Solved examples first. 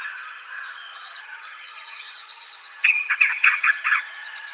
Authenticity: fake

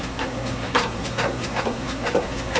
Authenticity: fake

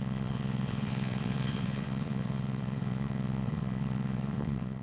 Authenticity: fake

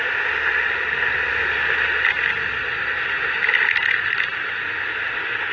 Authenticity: real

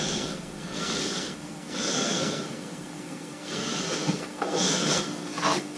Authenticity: fake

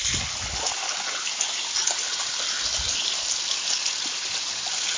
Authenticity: real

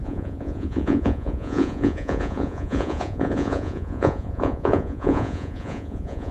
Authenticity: fake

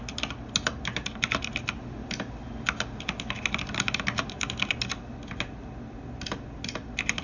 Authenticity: real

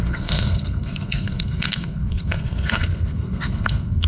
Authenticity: fake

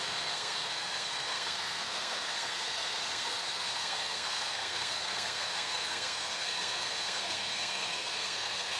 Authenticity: fake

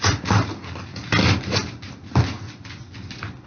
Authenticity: real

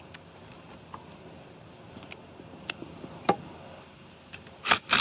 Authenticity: real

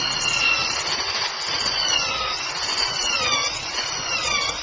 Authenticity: fake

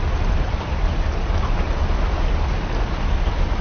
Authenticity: real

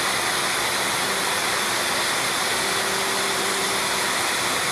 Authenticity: real